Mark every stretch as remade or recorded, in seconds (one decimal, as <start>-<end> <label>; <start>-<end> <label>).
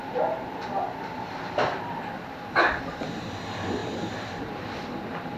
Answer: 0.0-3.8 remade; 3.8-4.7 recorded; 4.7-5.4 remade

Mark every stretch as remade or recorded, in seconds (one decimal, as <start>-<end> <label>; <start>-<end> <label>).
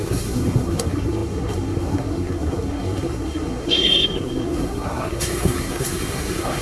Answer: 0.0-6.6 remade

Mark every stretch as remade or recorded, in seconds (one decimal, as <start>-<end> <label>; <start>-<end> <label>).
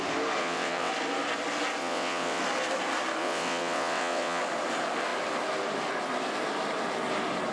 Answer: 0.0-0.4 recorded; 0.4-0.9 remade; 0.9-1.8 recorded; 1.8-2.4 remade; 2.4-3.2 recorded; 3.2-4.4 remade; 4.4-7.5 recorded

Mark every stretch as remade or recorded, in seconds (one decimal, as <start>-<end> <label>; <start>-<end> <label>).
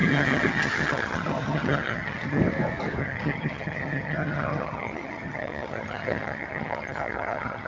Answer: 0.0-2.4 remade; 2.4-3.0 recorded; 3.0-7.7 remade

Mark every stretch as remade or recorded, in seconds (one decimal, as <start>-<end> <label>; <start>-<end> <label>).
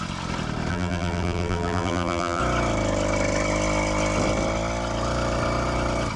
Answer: 0.0-0.7 recorded; 0.7-2.4 remade; 2.4-6.2 recorded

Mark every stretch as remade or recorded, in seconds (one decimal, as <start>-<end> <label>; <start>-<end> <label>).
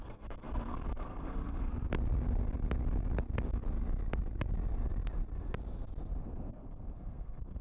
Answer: 0.0-1.7 remade; 1.7-6.3 recorded; 6.3-7.6 remade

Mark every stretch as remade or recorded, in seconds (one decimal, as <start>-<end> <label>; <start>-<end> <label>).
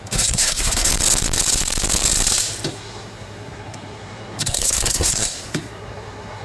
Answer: 0.0-0.9 remade; 0.9-2.7 recorded; 2.7-6.4 remade